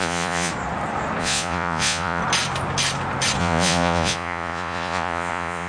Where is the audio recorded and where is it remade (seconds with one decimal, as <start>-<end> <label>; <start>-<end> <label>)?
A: 0.0-0.5 remade; 0.5-1.2 recorded; 1.2-2.2 remade; 2.2-3.4 recorded; 3.4-5.7 remade